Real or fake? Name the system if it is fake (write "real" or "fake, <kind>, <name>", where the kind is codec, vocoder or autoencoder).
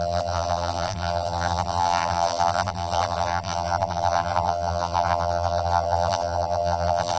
fake, vocoder, BigVGAN v2